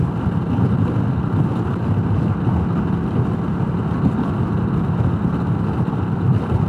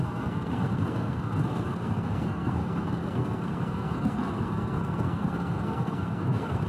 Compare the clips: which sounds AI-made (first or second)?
second